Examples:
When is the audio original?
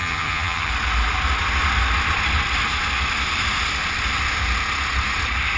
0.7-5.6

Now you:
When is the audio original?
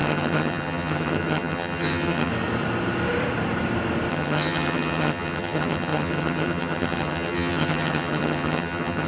2.3-4.1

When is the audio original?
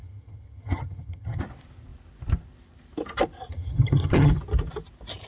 1.4-3.5; 4.3-5.3